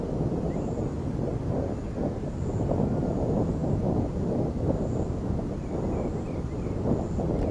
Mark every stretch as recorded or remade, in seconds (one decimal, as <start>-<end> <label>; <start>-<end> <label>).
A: 0.0-7.5 recorded